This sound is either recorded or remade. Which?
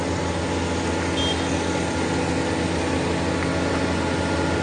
recorded